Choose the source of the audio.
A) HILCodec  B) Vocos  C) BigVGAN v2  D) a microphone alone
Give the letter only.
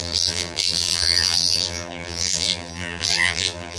C